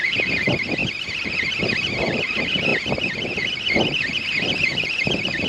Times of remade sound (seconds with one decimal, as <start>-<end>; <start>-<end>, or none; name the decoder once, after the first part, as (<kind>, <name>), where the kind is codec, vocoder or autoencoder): none